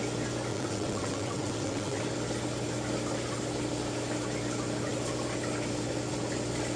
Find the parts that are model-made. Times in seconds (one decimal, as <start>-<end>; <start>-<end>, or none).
0.5-2.0